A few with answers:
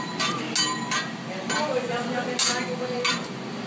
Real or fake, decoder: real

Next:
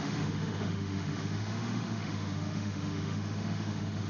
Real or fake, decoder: fake, autoencoder, DAC-VAE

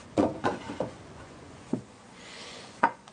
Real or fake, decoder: fake, vocoder, Vocos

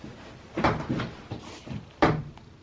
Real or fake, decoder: real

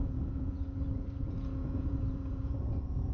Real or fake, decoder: fake, vocoder, Vocos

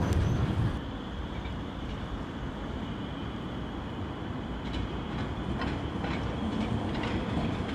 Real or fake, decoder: fake, vocoder, BigVGAN v2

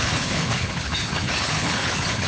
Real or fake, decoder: fake, codec, HILCodec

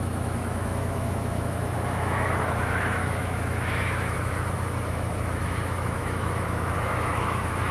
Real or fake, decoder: fake, autoencoder, DAC-VAE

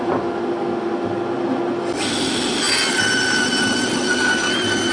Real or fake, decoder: real